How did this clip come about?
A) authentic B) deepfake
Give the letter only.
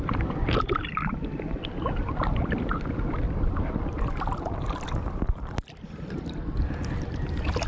A